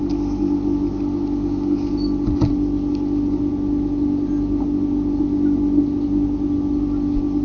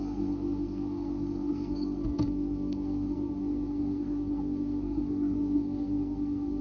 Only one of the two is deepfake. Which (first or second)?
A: second